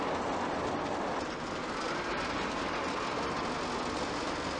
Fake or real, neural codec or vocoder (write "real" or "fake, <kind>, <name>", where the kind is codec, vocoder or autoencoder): real